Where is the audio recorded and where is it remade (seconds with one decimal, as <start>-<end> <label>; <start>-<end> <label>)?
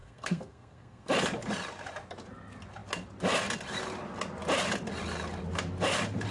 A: 0.0-1.1 remade; 1.1-6.3 recorded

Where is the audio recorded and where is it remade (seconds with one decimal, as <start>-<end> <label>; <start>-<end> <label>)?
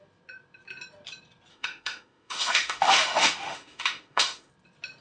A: 0.0-1.5 recorded; 1.5-4.5 remade; 4.5-5.0 recorded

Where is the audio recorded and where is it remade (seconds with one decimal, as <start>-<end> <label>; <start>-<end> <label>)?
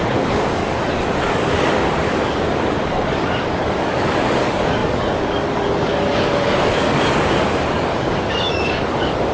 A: 0.0-0.6 remade; 0.6-1.2 recorded; 1.2-9.3 remade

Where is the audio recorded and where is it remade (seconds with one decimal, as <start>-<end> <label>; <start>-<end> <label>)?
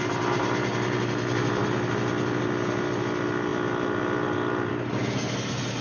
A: 0.0-5.8 recorded